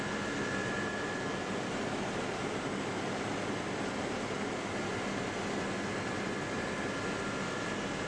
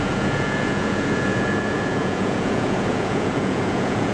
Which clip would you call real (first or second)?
first